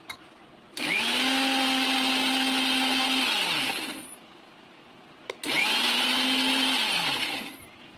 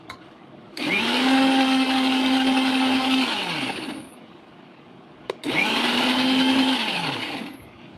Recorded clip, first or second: first